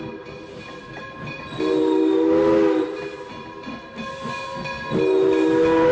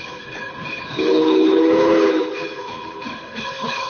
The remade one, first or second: second